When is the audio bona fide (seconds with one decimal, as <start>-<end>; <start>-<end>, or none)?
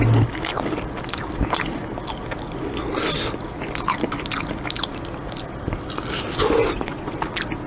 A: 0.0-6.6; 7.2-7.7